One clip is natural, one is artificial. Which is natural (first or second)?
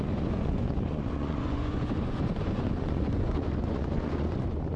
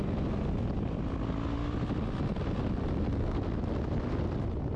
second